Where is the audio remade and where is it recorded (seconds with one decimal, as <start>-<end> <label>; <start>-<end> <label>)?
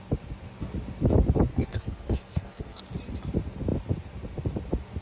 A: 0.0-1.5 recorded; 1.5-2.8 remade; 2.8-5.0 recorded